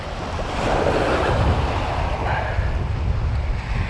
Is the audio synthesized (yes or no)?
no